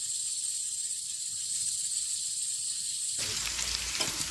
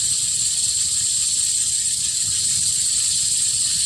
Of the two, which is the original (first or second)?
second